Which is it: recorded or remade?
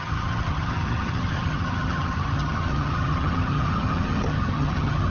remade